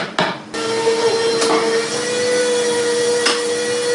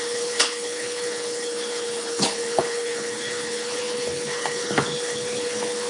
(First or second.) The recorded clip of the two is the first